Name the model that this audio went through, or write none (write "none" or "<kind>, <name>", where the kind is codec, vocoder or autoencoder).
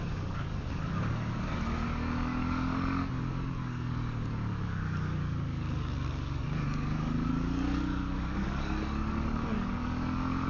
codec, DAC